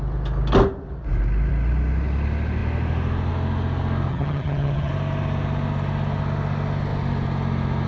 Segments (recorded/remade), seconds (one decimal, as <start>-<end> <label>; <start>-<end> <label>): 0.0-4.1 recorded; 4.1-4.9 remade; 4.9-7.9 recorded